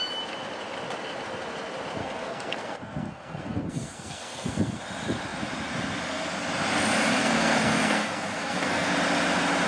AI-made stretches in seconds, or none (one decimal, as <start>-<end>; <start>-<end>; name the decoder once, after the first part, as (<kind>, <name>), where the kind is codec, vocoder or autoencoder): 2.0-4.8 (codec, SNAC); 7.2-8.9